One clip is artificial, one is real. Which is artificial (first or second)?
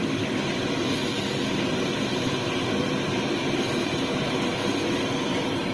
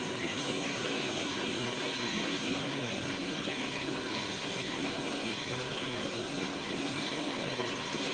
second